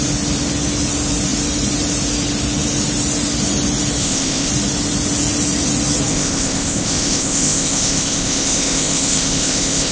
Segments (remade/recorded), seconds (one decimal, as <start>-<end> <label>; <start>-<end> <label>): 0.0-4.0 recorded; 4.0-4.5 remade; 4.5-6.1 recorded; 6.1-9.9 remade